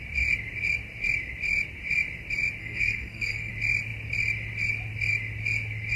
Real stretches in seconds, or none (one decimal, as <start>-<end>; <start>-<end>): 0.0-2.6; 3.5-6.0